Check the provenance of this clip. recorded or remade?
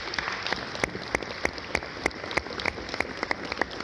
recorded